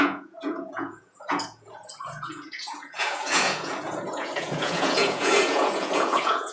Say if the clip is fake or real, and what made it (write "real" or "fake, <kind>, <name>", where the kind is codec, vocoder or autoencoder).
fake, vocoder, Vocos